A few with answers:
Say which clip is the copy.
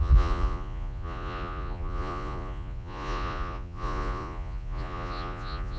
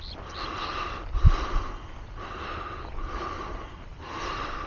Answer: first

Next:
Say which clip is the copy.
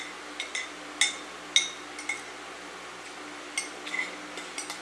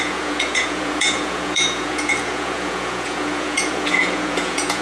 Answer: second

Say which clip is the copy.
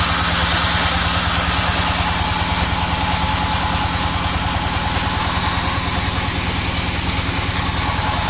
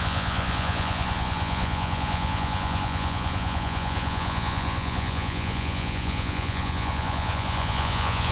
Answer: second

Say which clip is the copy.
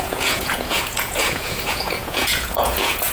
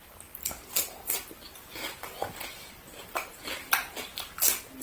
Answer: first